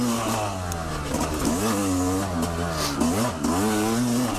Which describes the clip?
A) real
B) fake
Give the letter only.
A